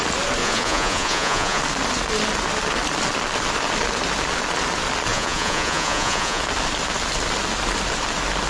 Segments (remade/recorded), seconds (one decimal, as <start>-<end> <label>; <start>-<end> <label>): 0.0-0.4 recorded; 0.4-1.6 remade; 1.6-5.1 recorded; 5.1-6.4 remade; 6.4-8.5 recorded